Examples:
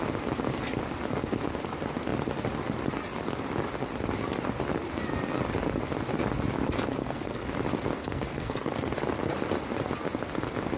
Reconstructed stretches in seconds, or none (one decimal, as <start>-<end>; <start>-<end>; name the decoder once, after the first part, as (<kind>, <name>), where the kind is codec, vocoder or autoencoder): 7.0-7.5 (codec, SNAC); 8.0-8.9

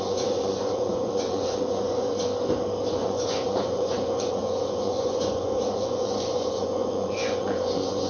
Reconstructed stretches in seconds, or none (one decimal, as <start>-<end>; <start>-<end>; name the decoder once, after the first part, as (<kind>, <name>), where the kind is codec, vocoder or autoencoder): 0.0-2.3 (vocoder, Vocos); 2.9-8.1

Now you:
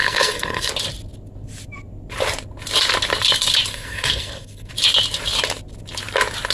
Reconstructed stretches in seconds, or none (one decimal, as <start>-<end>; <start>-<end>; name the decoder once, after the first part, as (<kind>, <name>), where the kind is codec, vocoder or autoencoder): 0.0-0.7 (codec, SNAC); 3.7-4.7

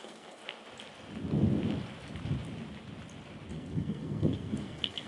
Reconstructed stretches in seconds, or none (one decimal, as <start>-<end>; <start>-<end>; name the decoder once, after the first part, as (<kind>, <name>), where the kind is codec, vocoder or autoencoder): 0.0-0.4 (codec, SNAC); 3.5-5.1

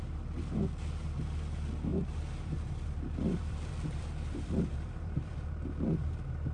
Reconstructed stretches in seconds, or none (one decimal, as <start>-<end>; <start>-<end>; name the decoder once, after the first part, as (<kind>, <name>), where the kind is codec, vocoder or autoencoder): 1.9-5.5 (vocoder, BigVGAN v2)

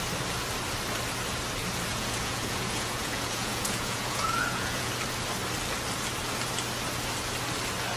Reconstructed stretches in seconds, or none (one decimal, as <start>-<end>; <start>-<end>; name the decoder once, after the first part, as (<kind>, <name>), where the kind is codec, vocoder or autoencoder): 1.9-4.9 (vocoder, Vocos)